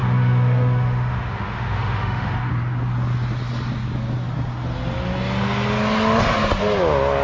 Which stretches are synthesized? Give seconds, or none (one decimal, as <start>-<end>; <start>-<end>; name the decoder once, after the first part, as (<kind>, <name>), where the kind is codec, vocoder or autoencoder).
0.0-2.5 (autoencoder, DAC-VAE)